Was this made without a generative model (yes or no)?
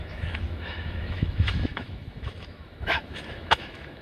no